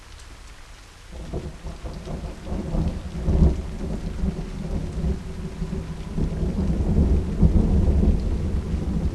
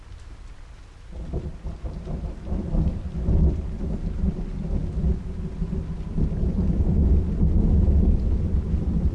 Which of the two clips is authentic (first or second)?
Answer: first